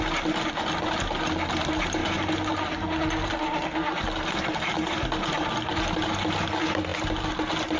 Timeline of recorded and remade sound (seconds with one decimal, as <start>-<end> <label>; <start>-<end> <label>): 0.0-7.8 recorded